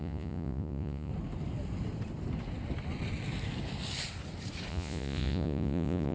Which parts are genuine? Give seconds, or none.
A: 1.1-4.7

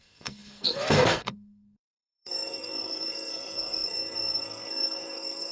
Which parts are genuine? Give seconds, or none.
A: none

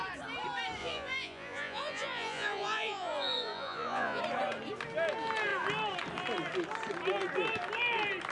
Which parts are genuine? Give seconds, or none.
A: 0.0-0.8; 4.2-8.3

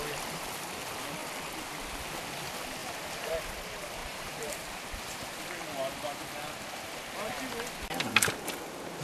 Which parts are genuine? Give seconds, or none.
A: 0.0-2.8; 3.3-4.0; 5.4-9.0

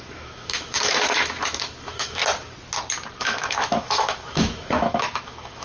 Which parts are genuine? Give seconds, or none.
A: 2.2-3.2